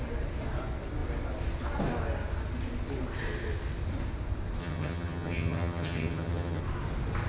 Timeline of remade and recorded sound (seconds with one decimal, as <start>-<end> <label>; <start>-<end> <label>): 0.0-4.6 recorded; 4.6-6.6 remade; 6.6-7.3 recorded